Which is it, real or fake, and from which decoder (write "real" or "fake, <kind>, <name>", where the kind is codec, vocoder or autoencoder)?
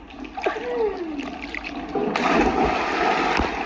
real